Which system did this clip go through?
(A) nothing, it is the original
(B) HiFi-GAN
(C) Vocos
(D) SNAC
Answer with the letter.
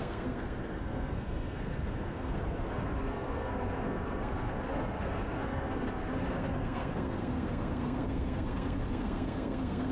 D